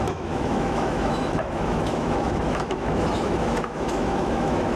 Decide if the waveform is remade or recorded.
remade